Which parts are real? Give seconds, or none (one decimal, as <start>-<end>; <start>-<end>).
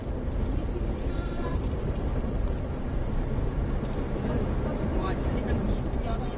0.0-1.1